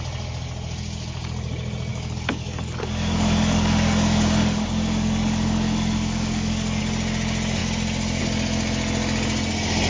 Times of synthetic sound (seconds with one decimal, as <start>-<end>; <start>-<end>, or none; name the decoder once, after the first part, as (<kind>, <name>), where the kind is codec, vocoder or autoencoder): 1.9-6.8 (codec, DAC)